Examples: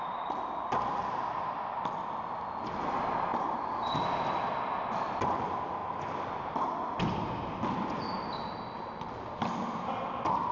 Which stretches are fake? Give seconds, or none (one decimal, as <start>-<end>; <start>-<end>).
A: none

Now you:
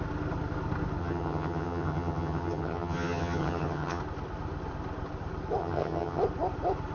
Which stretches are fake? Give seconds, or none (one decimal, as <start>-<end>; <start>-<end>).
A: 1.0-4.0; 5.6-6.2

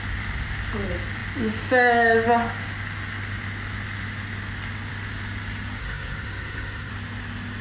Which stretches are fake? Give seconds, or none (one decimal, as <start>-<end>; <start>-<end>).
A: 5.8-6.9

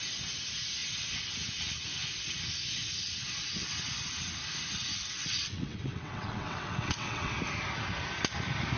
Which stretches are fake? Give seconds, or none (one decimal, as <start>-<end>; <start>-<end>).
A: 4.9-7.3